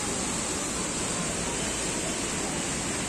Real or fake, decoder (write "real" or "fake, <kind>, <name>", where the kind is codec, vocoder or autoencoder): real